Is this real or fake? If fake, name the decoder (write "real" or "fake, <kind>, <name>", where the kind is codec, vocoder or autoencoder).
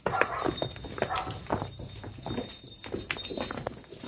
real